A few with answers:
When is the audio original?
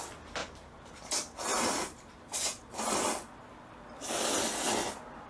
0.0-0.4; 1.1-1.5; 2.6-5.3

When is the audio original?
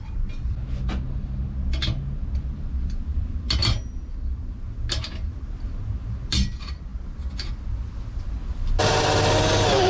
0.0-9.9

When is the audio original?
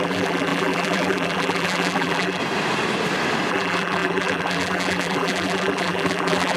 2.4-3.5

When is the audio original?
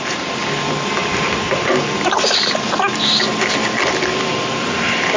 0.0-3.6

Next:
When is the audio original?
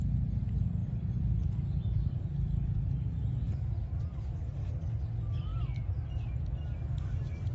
0.0-0.8; 4.7-7.5